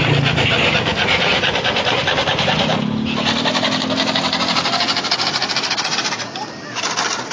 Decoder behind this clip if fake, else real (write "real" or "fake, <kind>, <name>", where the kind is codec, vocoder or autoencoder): real